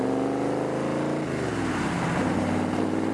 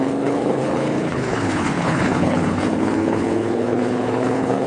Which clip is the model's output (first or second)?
second